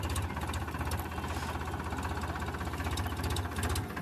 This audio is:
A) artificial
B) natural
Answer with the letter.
B